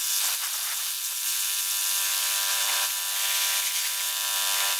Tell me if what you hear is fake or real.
fake